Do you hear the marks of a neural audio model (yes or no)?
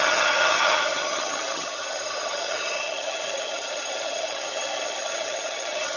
yes